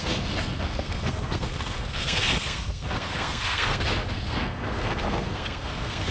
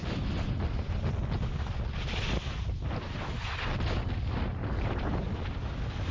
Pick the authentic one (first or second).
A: second